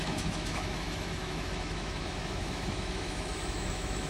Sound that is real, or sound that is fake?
fake